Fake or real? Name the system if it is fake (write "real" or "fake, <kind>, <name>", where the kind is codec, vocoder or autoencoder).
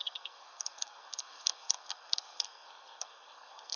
fake, codec, SNAC